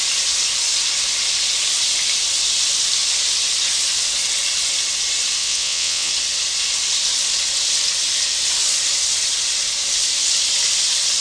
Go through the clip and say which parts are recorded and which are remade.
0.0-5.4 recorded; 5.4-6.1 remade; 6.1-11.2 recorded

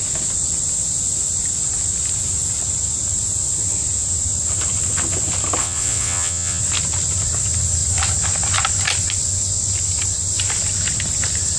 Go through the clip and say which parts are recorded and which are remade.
0.0-5.6 recorded; 5.6-6.6 remade; 6.6-11.6 recorded

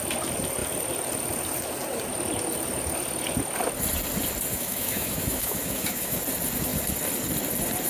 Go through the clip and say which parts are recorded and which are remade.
0.0-4.5 recorded; 4.5-6.2 remade; 6.2-7.9 recorded